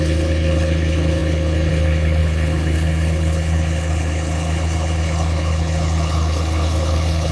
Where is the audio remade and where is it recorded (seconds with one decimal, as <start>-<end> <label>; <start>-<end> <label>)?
0.0-7.3 remade